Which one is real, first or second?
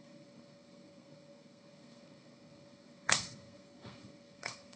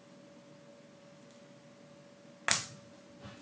second